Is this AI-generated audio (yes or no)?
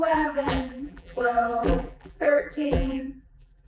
yes